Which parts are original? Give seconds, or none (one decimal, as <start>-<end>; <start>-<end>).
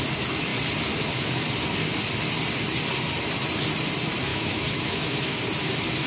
0.0-4.3; 5.4-6.1